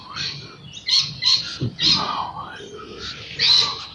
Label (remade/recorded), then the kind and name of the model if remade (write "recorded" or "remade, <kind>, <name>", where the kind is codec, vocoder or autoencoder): recorded